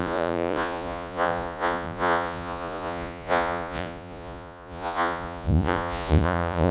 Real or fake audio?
fake